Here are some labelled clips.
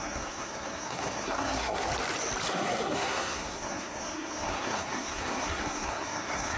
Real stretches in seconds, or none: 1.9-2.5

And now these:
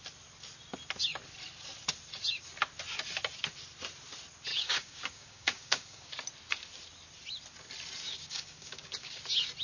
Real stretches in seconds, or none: 0.0-4.5; 6.1-8.0; 9.2-9.6

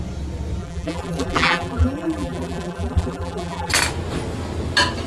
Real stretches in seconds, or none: 0.0-0.6; 3.7-5.1

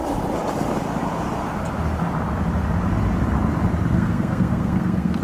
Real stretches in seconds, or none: 0.0-3.9